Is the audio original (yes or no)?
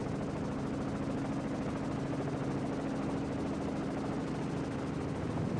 yes